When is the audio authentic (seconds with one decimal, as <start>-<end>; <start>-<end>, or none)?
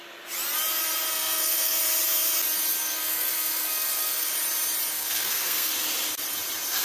0.0-1.1; 1.8-2.8; 4.3-4.9; 5.7-6.8